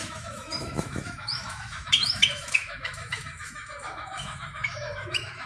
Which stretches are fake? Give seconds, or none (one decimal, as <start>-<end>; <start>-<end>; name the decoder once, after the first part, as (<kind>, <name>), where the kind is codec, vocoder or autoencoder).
0.0-5.5 (autoencoder, DAC-VAE)